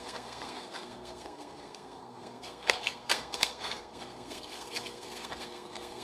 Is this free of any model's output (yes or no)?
no